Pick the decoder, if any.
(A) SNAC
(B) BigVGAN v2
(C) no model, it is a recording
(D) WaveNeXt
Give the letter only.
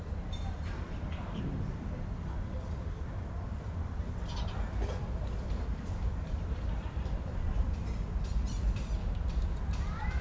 B